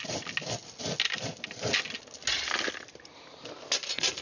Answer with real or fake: real